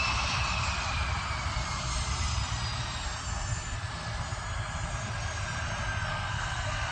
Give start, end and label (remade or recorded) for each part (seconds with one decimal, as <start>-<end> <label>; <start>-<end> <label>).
0.0-6.1 recorded; 6.1-6.9 remade